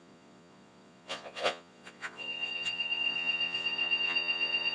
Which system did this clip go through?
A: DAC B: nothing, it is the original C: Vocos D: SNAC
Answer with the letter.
C